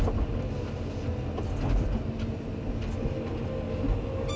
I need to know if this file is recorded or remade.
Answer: recorded